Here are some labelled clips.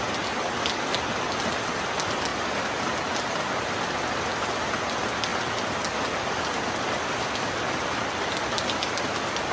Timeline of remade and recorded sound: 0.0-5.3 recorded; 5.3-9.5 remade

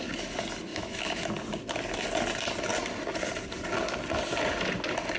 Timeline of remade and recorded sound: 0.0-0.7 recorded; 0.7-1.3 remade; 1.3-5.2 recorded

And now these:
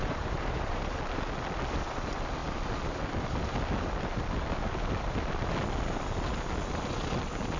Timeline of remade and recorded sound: 0.0-1.0 remade; 1.0-7.6 recorded

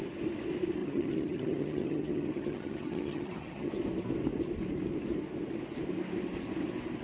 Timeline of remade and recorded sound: 0.0-0.8 recorded; 0.8-3.7 remade; 3.7-7.0 recorded

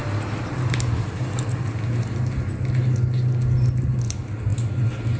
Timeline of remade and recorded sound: 0.0-5.2 recorded